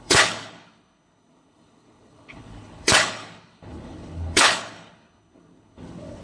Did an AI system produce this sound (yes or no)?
yes